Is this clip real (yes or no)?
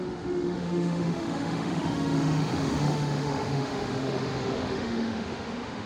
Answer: no